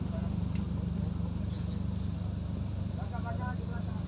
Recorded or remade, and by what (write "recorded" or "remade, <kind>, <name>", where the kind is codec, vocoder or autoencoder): recorded